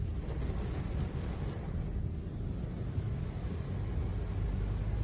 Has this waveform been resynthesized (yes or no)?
no